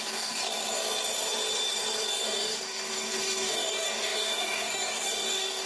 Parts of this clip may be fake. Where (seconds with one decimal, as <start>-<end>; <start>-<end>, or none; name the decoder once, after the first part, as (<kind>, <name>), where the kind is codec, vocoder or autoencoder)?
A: 0.0-0.4 (codec, DAC); 2.1-5.7